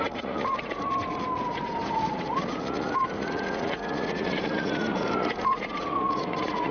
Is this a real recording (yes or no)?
no